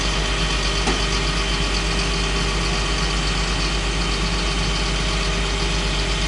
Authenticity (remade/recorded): recorded